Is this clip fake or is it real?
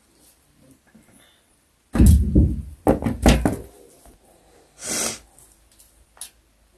real